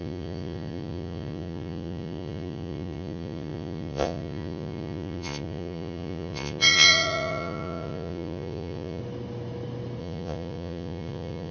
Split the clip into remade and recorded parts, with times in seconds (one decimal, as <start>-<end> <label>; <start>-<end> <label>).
0.0-9.0 remade; 9.0-10.0 recorded; 10.0-11.5 remade

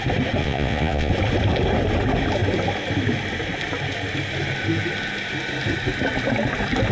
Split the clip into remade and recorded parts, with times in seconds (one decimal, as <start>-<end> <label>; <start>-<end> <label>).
0.0-0.4 recorded; 0.4-1.1 remade; 1.1-6.9 recorded

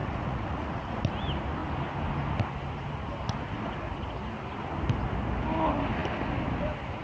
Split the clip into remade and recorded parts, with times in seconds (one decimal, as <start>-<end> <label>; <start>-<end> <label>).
0.0-1.0 remade; 1.0-7.0 recorded

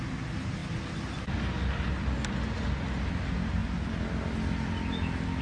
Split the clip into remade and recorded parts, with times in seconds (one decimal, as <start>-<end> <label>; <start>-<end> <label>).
0.0-5.4 recorded

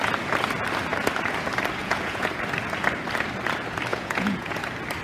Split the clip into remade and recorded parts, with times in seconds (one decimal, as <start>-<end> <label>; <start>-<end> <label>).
0.0-1.8 recorded; 1.8-2.3 remade; 2.3-3.9 recorded; 3.9-4.6 remade; 4.6-5.0 recorded